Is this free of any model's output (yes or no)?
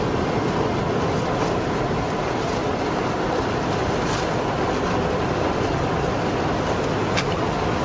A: yes